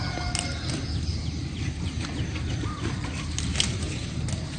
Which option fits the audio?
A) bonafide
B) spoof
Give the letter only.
A